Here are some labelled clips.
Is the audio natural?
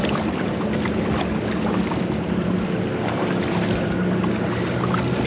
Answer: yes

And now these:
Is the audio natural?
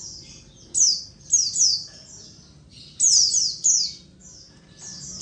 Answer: yes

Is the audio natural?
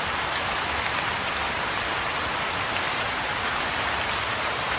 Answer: yes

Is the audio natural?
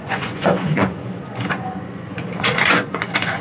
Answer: no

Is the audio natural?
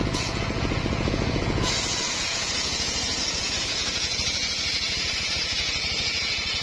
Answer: no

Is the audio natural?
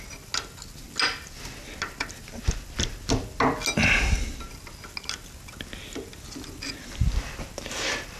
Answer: yes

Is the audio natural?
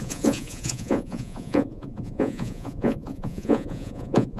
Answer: no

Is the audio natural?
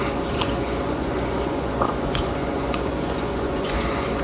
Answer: no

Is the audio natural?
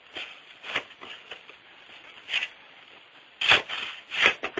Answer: yes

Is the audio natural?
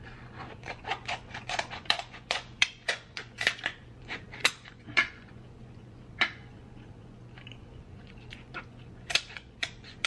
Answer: no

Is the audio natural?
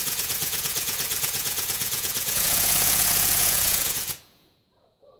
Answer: no